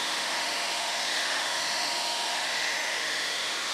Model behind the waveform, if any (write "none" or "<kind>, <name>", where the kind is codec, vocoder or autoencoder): autoencoder, DAC-VAE